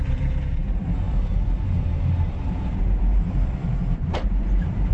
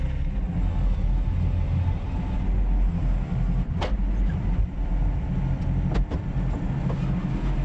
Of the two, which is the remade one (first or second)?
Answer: first